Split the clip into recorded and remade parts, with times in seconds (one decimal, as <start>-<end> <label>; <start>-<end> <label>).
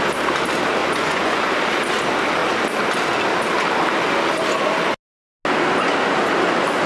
0.0-0.8 recorded; 0.8-1.5 remade; 1.5-6.9 recorded